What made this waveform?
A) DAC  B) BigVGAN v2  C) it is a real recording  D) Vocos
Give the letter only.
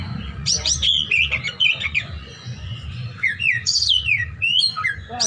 D